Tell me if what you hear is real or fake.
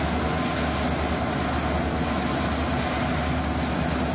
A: real